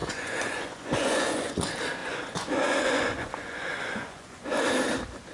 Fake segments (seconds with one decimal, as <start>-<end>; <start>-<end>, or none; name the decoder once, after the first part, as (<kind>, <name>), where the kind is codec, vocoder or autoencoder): 0.0-1.6 (vocoder, Vocos); 2.0-4.6